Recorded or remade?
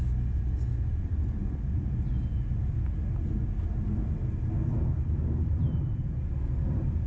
recorded